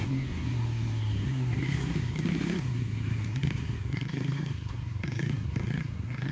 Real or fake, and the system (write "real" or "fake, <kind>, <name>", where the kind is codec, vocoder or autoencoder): fake, codec, SNAC